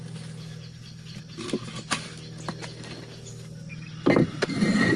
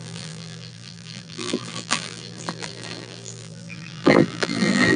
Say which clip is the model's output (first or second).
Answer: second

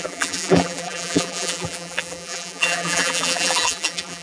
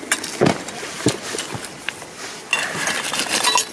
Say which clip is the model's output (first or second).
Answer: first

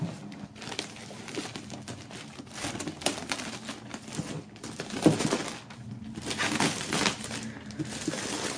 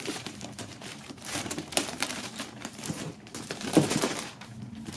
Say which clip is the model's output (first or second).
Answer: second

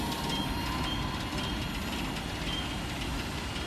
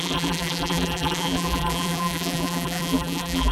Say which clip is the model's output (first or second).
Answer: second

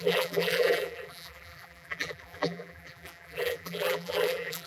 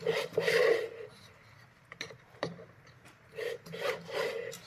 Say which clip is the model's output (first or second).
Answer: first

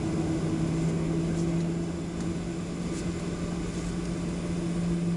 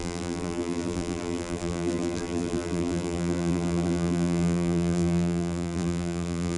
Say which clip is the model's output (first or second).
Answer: second